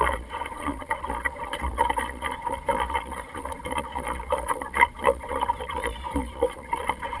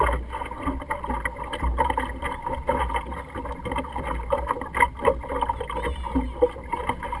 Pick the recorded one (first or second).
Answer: second